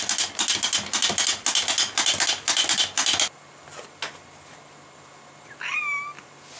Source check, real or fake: real